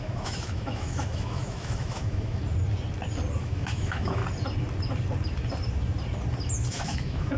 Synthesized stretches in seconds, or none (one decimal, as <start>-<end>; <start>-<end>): 0.0-2.4; 3.4-4.2; 6.7-7.4